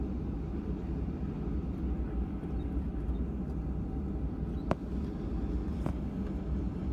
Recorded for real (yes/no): yes